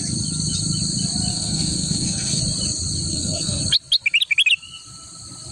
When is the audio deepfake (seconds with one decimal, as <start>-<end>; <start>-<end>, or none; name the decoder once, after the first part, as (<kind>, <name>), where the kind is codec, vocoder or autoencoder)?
1.3-2.4 (codec, SNAC); 3.1-3.6

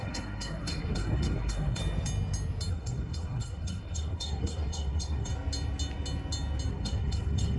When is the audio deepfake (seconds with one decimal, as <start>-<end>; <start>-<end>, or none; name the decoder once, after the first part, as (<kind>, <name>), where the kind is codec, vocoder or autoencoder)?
0.0-1.8 (codec, SNAC); 2.7-5.3; 6.7-7.6

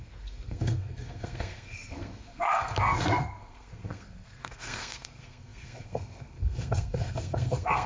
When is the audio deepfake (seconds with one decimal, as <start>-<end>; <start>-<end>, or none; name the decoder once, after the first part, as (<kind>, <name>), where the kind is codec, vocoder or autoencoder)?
0.0-7.9 (codec, SNAC)

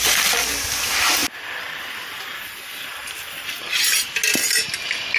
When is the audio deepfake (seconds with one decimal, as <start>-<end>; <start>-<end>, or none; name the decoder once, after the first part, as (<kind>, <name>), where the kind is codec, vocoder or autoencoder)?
none

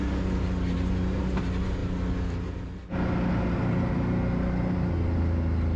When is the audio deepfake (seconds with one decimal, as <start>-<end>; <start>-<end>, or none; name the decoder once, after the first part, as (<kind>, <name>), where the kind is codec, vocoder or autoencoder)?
none